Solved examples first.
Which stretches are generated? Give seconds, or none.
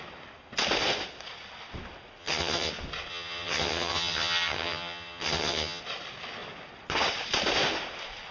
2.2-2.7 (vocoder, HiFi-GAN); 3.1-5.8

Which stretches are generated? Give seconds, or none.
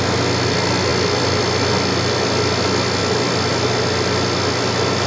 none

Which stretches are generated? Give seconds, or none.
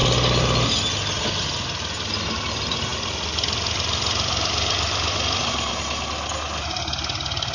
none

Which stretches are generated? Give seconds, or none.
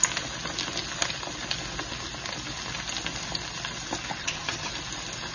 4.2-4.7 (vocoder, HiFi-GAN)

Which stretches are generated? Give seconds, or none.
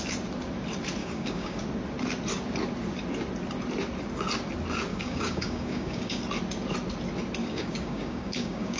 1.0-1.6 (codec, DAC); 4.9-6.2; 7.4-8.8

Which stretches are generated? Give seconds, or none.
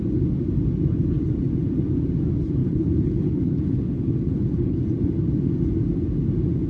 2.6-4.8 (codec, HILCodec)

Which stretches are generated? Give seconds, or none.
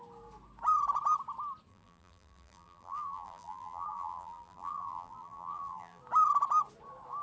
1.7-6.0 (vocoder, BigVGAN v2)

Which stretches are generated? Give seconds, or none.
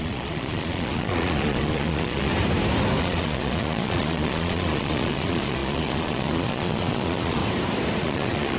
0.0-2.3 (vocoder, Vocos); 3.0-7.4; 8.0-8.6